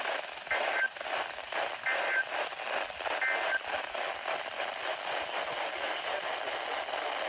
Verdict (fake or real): real